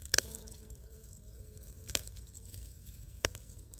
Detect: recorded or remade remade